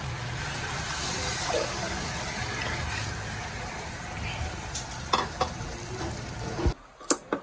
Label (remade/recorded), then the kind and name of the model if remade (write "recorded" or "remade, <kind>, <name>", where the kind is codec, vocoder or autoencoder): recorded